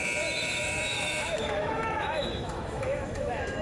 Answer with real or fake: fake